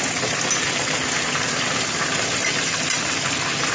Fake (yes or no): no